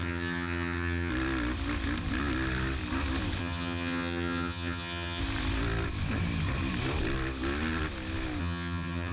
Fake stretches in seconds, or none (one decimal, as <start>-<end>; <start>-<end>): 0.0-1.1; 3.4-5.2; 8.4-9.1